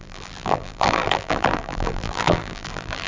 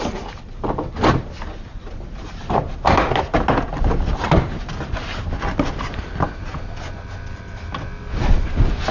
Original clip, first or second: second